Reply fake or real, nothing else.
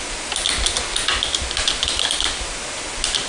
real